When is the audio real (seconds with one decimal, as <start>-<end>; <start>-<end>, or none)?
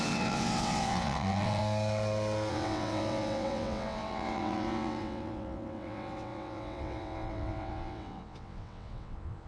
1.6-2.5